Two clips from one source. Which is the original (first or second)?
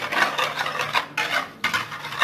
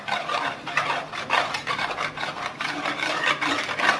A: first